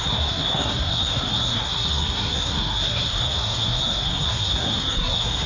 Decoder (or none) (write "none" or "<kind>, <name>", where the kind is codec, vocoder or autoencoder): codec, SNAC